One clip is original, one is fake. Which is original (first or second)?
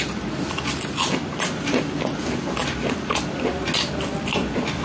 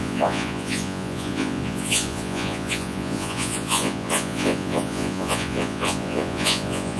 first